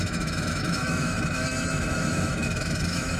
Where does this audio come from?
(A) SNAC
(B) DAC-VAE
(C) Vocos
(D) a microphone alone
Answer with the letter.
B